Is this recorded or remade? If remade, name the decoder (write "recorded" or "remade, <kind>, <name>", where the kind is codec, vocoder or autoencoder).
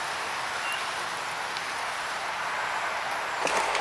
recorded